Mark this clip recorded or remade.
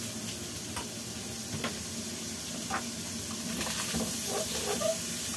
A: recorded